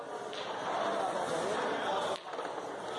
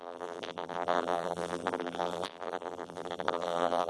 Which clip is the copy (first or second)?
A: second